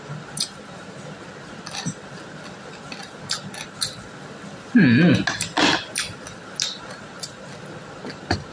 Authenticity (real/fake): real